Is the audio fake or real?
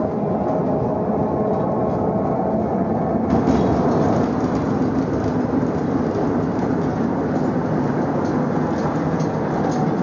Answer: real